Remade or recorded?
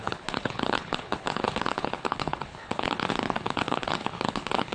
remade